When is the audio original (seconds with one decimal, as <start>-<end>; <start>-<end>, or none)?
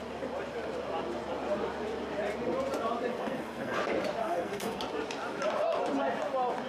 0.0-3.1; 3.8-4.2; 4.8-6.7